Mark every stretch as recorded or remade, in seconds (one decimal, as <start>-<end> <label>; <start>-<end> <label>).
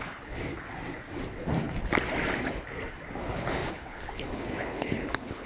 0.0-0.4 remade; 0.4-3.2 recorded; 3.2-5.5 remade